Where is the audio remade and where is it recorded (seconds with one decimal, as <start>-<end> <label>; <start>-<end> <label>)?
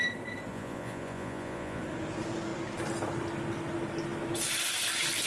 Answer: 0.0-0.5 recorded; 0.5-1.8 remade; 1.8-5.3 recorded